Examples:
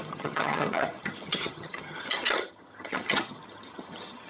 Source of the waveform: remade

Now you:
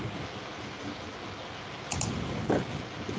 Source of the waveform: recorded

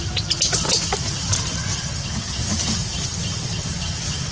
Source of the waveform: recorded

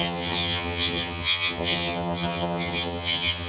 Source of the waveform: remade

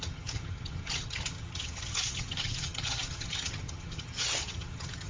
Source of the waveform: remade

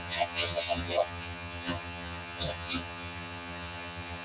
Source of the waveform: remade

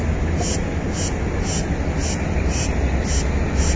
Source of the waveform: recorded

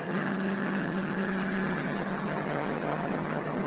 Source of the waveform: remade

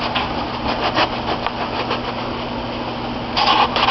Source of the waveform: recorded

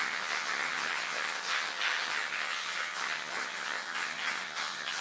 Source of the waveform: remade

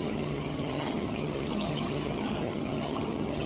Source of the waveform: remade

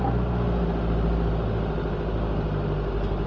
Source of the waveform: recorded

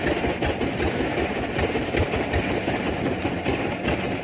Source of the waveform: recorded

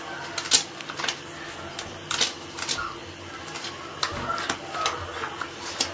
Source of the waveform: recorded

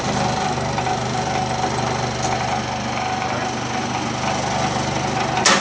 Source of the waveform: recorded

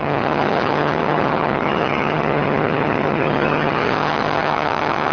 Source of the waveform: remade